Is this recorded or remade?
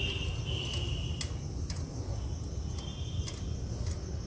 recorded